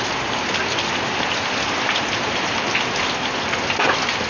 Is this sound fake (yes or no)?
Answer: no